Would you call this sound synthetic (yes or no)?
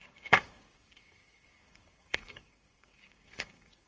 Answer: yes